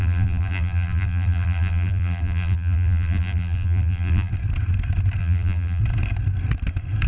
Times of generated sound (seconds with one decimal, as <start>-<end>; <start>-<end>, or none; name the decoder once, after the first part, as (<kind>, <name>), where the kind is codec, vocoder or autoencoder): 0.0-4.3 (vocoder, BigVGAN v2); 5.2-5.8